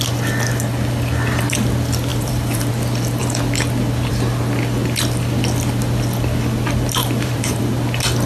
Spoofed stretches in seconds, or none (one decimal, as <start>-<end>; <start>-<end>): 2.1-2.7; 7.0-7.6